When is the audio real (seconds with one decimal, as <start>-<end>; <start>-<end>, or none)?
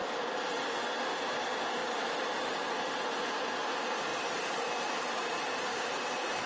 0.6-1.8; 2.8-4.1